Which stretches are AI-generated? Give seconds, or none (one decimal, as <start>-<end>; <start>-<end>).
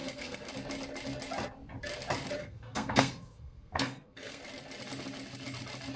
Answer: 0.0-0.5; 2.4-4.4